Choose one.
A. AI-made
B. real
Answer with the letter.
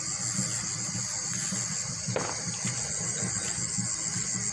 B